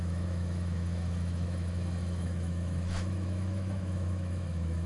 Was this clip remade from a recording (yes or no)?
yes